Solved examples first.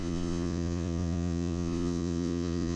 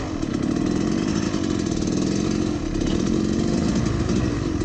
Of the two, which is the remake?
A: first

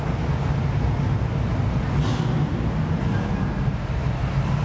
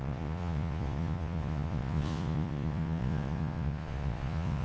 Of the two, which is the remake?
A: second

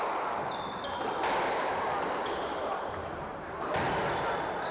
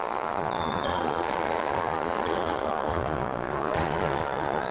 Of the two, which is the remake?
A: second